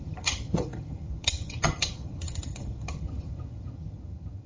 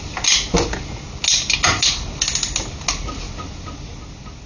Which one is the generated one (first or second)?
first